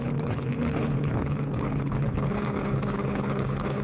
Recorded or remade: remade